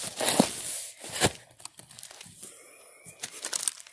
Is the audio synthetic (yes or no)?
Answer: no